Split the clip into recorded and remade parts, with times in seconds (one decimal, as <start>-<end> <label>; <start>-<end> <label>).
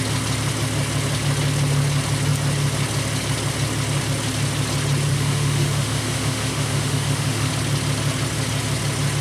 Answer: 0.0-5.1 recorded; 5.1-7.5 remade; 7.5-9.2 recorded